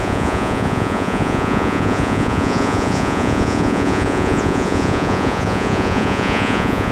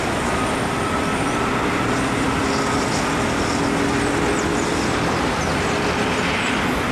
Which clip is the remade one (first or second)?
first